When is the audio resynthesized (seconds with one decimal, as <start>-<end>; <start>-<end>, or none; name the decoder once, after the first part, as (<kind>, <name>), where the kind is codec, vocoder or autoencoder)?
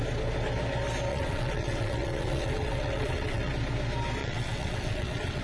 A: 1.1-3.5 (vocoder, WaveNeXt); 4.2-5.4